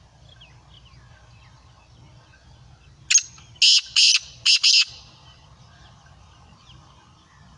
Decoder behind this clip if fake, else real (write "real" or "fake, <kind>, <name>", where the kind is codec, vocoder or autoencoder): real